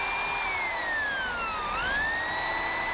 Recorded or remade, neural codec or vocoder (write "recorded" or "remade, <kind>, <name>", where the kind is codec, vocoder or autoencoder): recorded